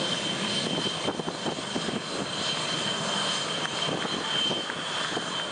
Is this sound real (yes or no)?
yes